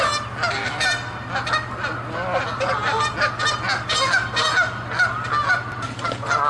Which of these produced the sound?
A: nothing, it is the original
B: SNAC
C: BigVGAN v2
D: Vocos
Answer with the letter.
A